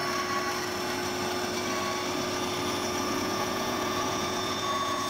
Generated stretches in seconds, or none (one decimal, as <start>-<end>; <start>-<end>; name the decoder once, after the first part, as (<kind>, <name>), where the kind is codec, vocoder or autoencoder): 3.1-5.1 (vocoder, Vocos)